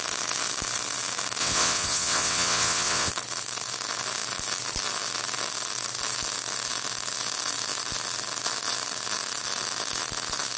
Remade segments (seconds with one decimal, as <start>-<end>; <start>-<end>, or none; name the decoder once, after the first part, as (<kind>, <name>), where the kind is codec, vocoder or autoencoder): 1.4-3.1 (vocoder, WaveNeXt)